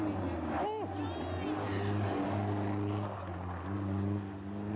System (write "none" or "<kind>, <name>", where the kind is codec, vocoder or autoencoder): none